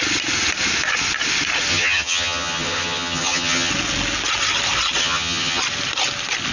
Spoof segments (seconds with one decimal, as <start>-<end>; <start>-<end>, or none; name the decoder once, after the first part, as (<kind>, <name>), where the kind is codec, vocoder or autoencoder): 1.7-3.7 (vocoder, HiFi-GAN); 5.0-5.6